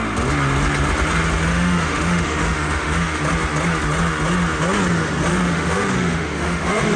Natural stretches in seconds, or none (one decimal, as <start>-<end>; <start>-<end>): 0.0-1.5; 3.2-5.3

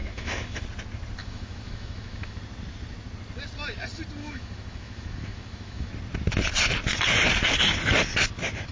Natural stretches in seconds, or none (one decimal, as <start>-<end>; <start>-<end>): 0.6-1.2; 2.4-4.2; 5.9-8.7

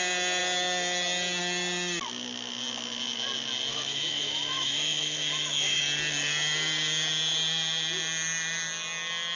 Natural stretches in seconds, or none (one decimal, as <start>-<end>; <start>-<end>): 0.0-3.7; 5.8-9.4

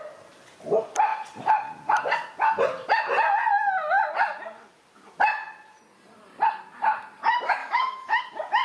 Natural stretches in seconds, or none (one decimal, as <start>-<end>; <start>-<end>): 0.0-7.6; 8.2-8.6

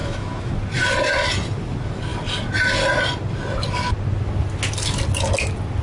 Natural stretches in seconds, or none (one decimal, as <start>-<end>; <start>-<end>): 0.5-5.8

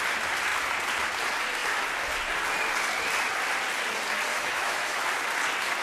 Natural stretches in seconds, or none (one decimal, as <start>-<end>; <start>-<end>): 0.0-4.3; 5.0-5.8

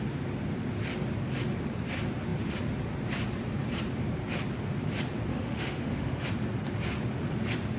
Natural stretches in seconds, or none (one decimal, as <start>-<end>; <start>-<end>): 0.0-5.3; 6.3-7.8